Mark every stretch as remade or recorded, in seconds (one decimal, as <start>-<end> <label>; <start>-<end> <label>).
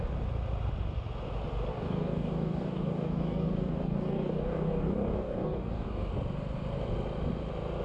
0.0-1.7 recorded; 1.7-6.1 remade; 6.1-7.8 recorded